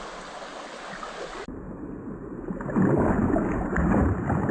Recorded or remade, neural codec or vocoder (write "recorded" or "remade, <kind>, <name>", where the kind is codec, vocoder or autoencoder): recorded